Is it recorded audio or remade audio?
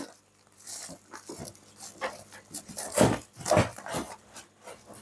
recorded